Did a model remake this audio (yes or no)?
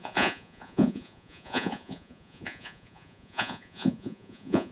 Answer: yes